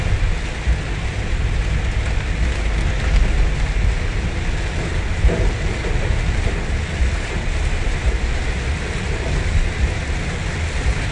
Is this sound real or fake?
real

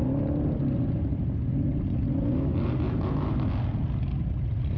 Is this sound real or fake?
real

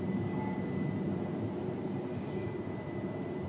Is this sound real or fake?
real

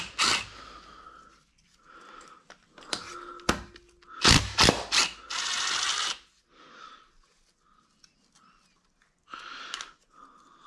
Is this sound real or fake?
real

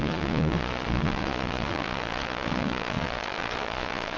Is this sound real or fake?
fake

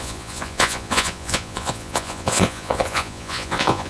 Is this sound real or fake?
fake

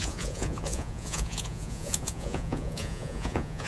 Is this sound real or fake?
fake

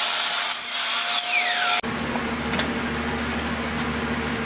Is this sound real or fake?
real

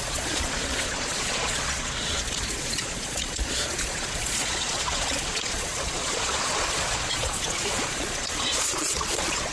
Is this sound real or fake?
fake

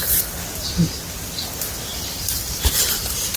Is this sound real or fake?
real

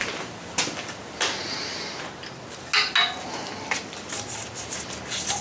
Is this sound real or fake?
real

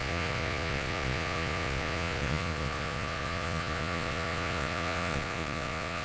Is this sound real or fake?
fake